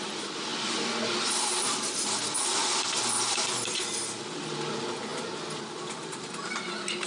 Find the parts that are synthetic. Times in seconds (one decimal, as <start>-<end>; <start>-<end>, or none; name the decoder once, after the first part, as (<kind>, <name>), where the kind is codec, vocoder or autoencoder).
none